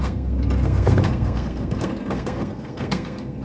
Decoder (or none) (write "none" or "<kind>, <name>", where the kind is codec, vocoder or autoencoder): codec, SNAC